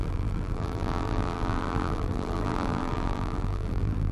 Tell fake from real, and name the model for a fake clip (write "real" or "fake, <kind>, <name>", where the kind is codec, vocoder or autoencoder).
fake, vocoder, BigVGAN v2